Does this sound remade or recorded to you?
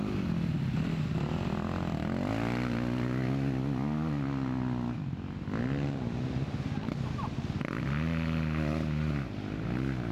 recorded